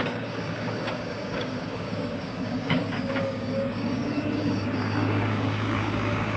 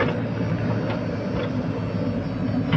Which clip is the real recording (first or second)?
second